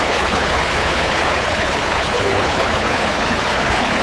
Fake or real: fake